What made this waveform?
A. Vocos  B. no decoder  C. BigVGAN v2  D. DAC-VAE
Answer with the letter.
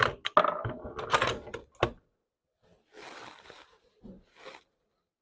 B